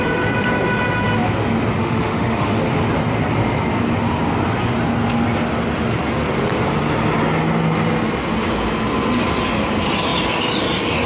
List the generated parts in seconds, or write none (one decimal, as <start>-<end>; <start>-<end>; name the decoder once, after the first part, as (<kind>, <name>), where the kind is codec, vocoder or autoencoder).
1.8-2.6 (autoencoder, DAC-VAE)